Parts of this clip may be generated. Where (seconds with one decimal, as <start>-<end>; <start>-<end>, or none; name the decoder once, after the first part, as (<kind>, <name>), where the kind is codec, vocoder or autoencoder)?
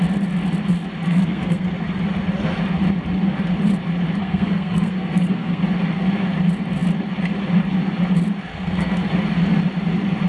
1.0-1.7 (codec, SNAC); 4.2-5.6; 8.5-9.1